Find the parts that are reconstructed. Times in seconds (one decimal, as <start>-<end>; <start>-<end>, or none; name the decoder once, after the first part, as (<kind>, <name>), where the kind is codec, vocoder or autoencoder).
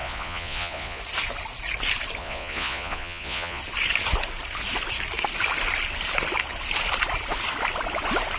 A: 0.0-1.0 (vocoder, Vocos); 2.2-3.6